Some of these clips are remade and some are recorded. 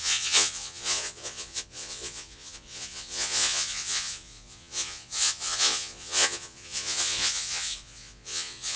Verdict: remade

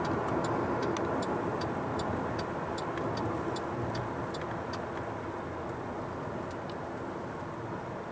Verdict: recorded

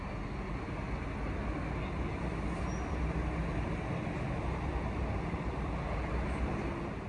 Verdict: recorded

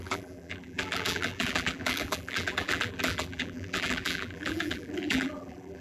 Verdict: remade